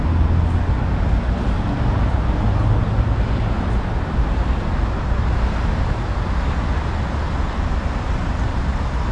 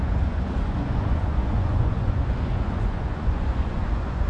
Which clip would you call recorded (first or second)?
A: first